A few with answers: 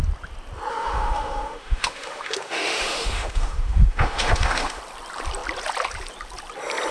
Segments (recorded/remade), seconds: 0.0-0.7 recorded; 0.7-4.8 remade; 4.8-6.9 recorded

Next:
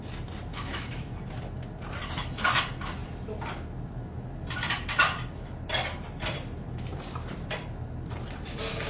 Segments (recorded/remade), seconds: 0.0-0.5 recorded; 0.5-1.3 remade; 1.3-2.0 recorded; 2.0-2.6 remade; 2.6-8.9 recorded

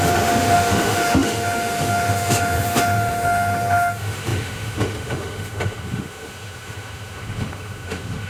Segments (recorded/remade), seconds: 0.0-8.3 remade

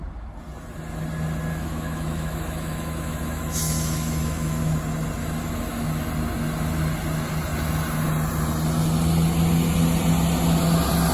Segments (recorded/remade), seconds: 0.0-1.5 recorded; 1.5-4.8 remade; 4.8-5.2 recorded; 5.2-6.1 remade; 6.1-11.1 recorded

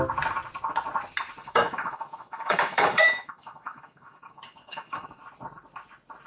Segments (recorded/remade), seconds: 0.0-1.4 recorded; 1.4-5.2 remade; 5.2-6.3 recorded